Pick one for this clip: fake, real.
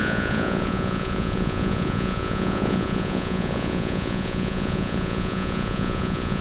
fake